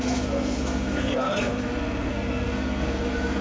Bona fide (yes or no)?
no